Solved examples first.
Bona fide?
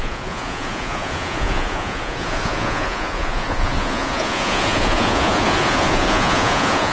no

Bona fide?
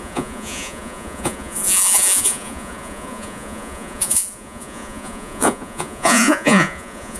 no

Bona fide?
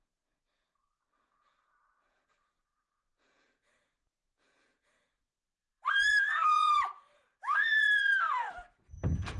no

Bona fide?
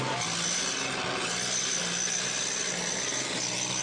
yes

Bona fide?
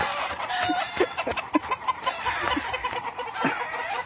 yes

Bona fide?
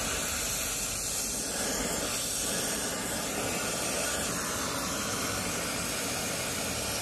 yes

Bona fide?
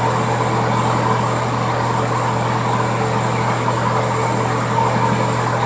yes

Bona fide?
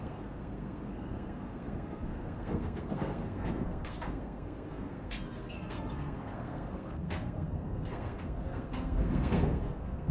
no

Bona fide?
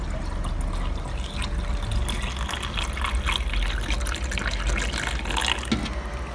yes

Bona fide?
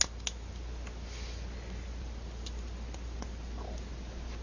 yes